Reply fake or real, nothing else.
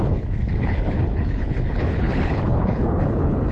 fake